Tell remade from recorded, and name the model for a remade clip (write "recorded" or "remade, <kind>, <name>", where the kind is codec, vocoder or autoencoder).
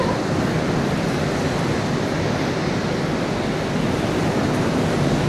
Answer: recorded